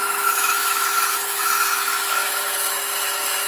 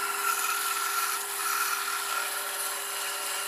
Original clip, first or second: second